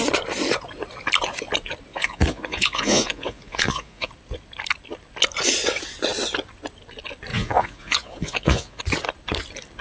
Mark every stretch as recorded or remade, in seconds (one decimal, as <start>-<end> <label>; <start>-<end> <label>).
0.0-1.9 recorded; 1.9-4.1 remade; 4.1-7.3 recorded; 7.3-8.8 remade; 8.8-9.8 recorded